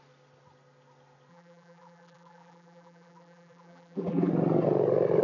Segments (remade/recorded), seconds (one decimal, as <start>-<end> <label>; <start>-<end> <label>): 0.0-1.3 recorded; 1.3-4.3 remade; 4.3-5.2 recorded